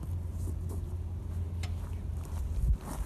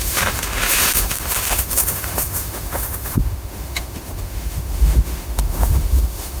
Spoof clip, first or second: second